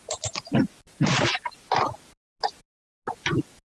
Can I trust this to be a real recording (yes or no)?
yes